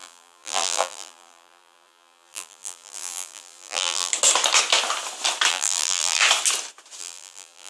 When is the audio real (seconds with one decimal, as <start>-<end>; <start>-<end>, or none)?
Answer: 4.1-5.5; 6.2-7.0